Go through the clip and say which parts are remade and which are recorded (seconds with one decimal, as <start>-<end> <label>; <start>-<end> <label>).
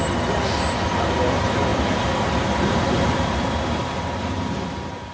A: 0.0-5.1 recorded